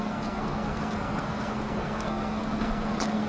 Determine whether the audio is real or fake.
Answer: fake